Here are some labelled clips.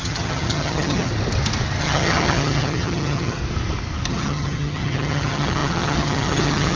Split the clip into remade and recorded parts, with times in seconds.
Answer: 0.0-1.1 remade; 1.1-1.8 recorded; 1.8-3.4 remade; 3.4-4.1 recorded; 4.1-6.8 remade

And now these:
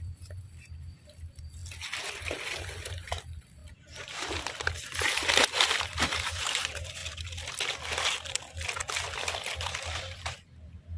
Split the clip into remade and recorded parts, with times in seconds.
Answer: 0.0-1.6 remade; 1.6-2.2 recorded; 2.2-5.2 remade; 5.2-6.0 recorded; 6.0-7.0 remade; 7.0-9.7 recorded; 9.7-11.0 remade

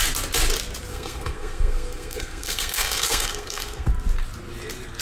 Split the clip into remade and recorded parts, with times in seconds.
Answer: 0.0-0.9 recorded; 0.9-3.9 remade; 3.9-5.0 recorded

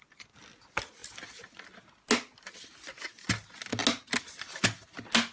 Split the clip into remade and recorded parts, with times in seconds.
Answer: 0.0-5.3 recorded

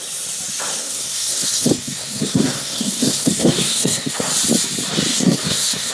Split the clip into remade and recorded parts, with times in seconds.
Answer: 0.0-0.8 recorded; 0.8-4.3 remade; 4.3-5.1 recorded; 5.1-5.9 remade

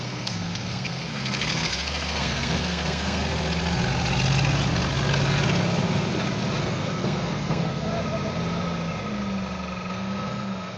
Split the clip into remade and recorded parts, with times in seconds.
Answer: 0.0-3.2 remade; 3.2-6.6 recorded; 6.6-7.9 remade; 7.9-9.9 recorded; 9.9-10.8 remade